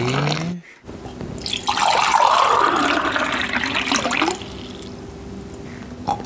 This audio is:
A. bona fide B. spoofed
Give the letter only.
A